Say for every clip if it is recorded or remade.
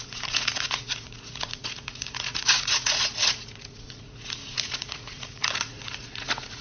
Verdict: remade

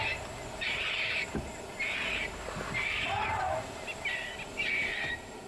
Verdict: recorded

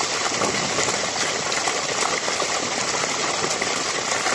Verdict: recorded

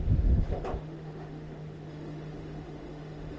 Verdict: remade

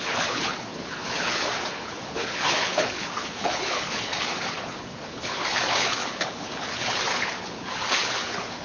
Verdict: remade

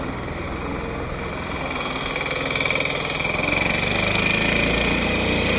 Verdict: recorded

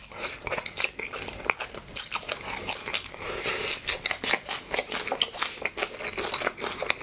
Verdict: recorded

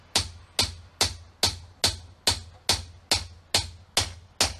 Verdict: recorded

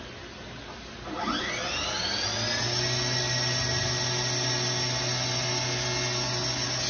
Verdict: recorded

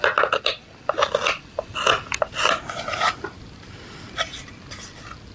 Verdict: recorded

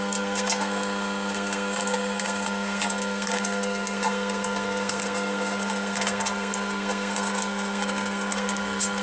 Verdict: remade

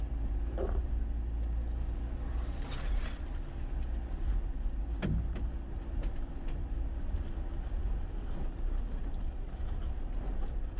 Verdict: recorded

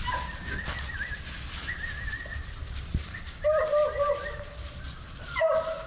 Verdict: recorded